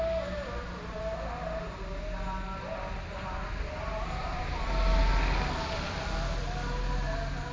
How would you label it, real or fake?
real